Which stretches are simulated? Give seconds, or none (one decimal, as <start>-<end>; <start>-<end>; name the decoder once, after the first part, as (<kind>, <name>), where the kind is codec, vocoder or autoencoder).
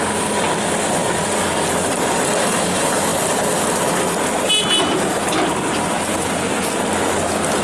none